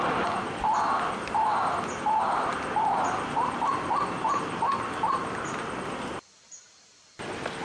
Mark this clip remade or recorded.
recorded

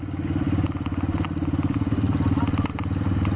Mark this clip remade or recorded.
recorded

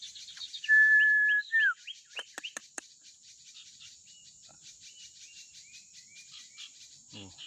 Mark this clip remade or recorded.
recorded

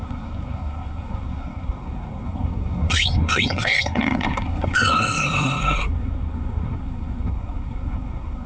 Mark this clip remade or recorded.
remade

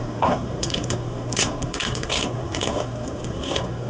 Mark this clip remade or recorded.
remade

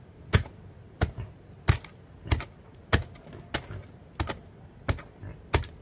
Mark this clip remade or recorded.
recorded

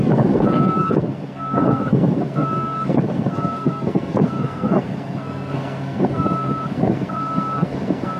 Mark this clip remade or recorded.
remade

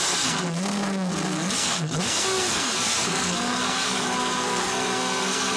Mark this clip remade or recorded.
remade